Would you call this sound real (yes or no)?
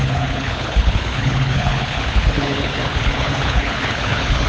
no